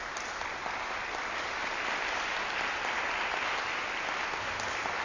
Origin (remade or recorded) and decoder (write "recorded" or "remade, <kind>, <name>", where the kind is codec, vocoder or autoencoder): recorded